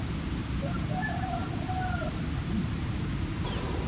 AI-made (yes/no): no